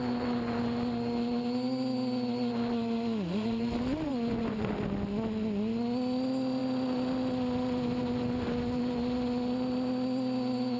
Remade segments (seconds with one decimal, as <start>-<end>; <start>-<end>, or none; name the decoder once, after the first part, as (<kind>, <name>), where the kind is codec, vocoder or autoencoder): 4.1-4.7 (vocoder, Vocos)